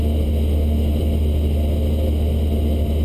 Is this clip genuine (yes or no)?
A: yes